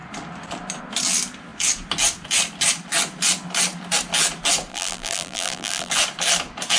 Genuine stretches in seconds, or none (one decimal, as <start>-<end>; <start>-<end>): 0.0-4.7; 5.9-6.8